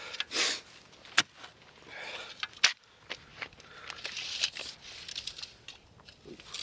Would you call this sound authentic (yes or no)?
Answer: yes